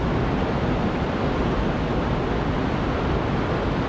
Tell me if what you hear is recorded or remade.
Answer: recorded